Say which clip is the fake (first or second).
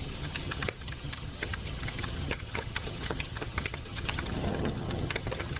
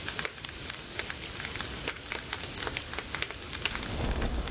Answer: first